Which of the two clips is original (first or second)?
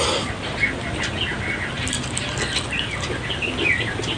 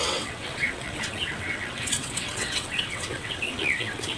first